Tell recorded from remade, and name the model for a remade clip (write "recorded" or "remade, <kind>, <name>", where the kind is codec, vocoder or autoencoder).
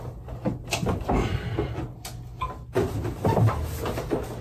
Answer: recorded